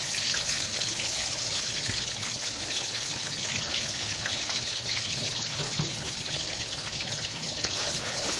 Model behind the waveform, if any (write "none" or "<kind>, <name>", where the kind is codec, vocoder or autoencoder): codec, HILCodec